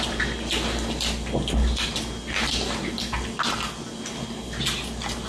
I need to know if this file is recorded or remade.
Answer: recorded